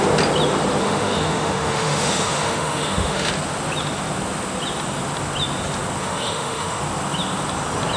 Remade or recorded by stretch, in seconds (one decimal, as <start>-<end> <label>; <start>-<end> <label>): 0.0-0.8 recorded; 0.8-3.3 remade; 3.3-6.0 recorded; 6.0-6.8 remade; 6.8-8.0 recorded